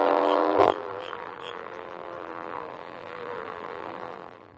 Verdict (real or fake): fake